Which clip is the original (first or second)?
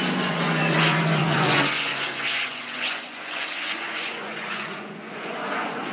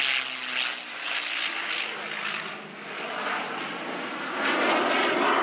second